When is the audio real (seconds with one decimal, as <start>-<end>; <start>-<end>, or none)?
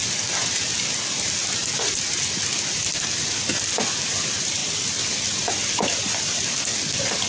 0.0-7.3